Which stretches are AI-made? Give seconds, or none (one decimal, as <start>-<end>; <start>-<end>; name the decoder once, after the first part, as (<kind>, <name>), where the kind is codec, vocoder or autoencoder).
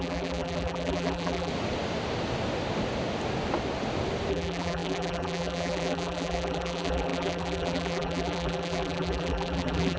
0.0-1.5 (vocoder, BigVGAN v2); 4.3-10.0